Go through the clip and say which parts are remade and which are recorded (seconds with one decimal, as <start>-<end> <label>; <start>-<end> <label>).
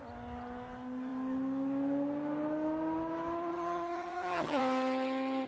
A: 0.0-3.5 recorded; 3.5-4.6 remade; 4.6-5.5 recorded